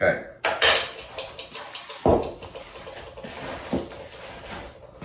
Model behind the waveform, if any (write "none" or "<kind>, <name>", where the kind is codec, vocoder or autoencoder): none